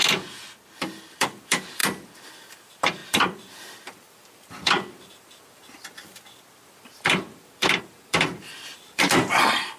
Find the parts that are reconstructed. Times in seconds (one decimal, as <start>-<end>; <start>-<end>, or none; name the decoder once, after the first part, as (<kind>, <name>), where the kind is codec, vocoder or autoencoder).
1.1-1.8 (vocoder, BigVGAN v2); 2.4-9.8